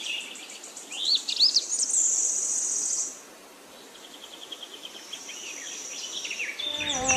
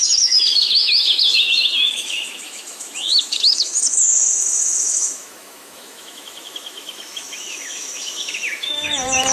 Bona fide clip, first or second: first